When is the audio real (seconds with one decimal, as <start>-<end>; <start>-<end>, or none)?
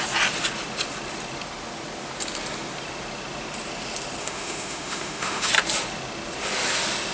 0.0-4.2; 5.5-7.1